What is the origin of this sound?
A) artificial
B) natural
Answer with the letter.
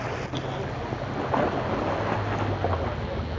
B